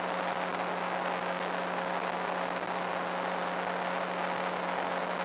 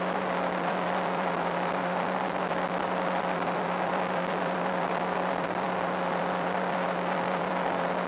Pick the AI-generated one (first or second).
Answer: second